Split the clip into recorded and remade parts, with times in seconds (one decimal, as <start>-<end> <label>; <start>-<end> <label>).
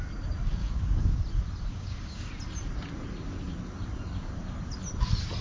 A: 0.0-0.6 recorded; 0.6-1.2 remade; 1.2-1.7 recorded; 1.7-2.3 remade; 2.3-5.4 recorded